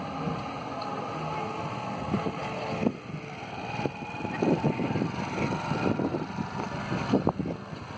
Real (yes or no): yes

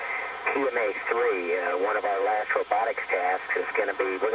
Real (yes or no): no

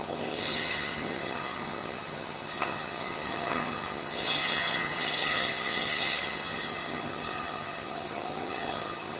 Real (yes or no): no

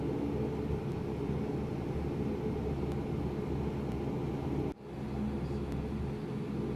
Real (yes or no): yes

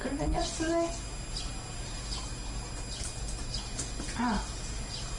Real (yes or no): yes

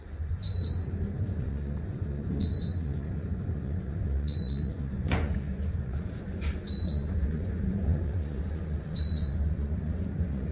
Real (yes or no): no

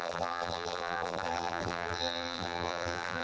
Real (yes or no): no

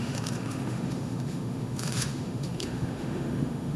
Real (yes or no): no